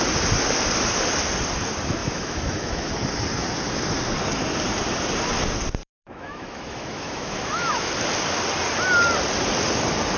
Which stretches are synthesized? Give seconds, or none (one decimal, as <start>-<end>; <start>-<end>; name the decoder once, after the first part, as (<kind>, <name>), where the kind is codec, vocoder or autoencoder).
2.0-2.9 (autoencoder, DAC-VAE); 5.8-7.9